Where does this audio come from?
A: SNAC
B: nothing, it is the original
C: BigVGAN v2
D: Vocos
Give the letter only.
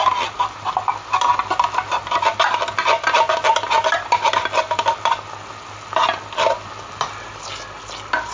B